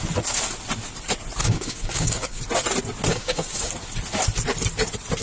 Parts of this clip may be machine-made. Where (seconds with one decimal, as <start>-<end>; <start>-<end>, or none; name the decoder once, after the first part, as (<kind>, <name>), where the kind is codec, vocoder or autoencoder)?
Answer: 1.4-2.4 (codec, DAC); 3.1-3.7